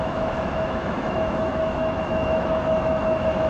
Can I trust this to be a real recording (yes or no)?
no